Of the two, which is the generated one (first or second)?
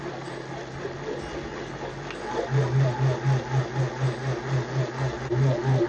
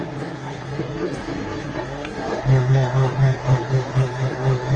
second